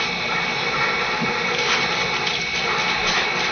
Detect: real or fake real